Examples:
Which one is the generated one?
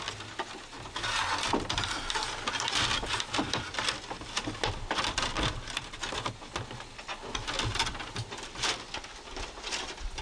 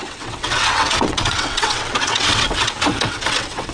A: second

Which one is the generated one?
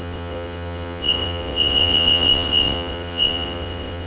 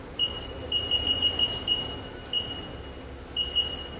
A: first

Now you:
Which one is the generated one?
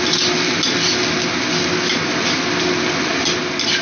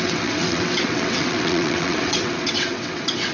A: second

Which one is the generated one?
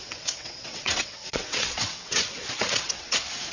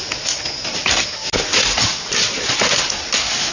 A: first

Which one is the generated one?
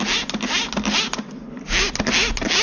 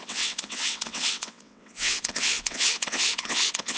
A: second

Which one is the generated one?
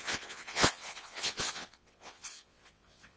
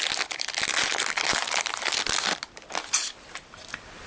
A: first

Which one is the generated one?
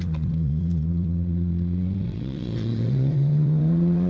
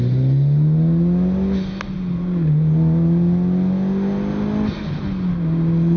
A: first